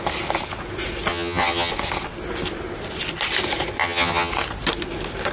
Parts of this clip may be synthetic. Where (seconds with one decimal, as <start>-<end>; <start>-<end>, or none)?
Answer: 1.1-1.7; 3.8-4.3